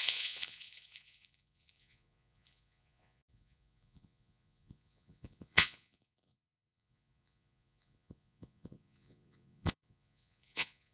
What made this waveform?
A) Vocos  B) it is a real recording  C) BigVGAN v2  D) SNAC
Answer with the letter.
A